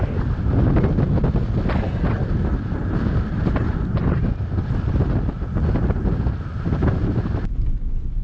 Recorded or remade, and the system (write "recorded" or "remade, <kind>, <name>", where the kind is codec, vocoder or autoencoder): recorded